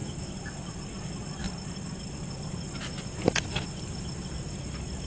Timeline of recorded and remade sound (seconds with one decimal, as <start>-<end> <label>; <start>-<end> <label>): 0.0-5.1 recorded